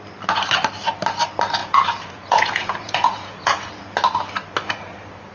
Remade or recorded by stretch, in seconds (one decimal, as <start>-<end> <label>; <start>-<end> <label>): 0.0-1.6 recorded; 1.6-3.7 remade; 3.7-5.3 recorded